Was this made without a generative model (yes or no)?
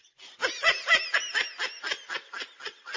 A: yes